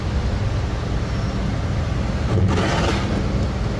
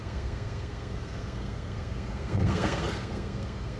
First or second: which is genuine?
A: first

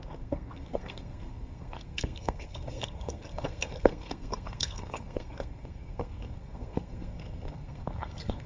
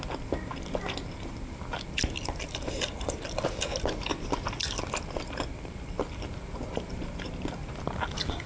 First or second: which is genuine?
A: second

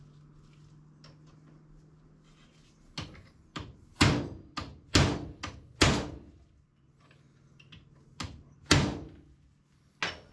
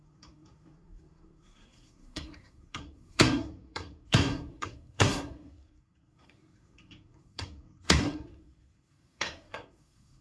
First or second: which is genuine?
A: first